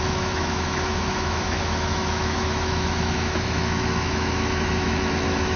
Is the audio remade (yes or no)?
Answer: yes